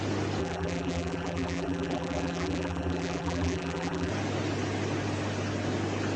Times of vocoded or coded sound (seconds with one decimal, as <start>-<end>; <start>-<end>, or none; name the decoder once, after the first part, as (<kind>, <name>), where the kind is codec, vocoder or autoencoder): 0.4-4.1 (vocoder, BigVGAN v2)